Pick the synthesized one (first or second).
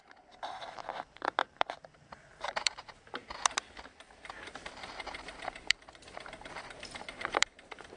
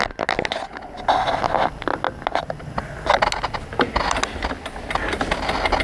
first